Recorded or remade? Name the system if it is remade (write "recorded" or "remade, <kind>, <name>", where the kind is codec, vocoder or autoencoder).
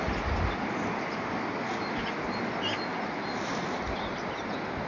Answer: recorded